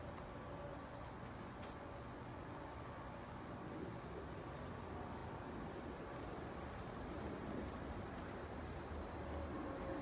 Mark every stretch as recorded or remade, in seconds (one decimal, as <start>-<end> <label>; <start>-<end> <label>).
0.0-0.7 recorded; 0.7-4.2 remade; 4.2-10.0 recorded